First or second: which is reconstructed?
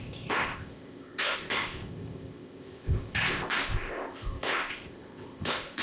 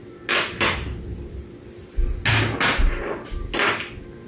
first